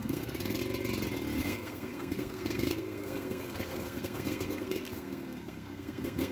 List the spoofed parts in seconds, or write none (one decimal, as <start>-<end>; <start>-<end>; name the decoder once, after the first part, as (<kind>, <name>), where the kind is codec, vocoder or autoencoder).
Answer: 0.0-0.6 (codec, SNAC); 1.4-6.3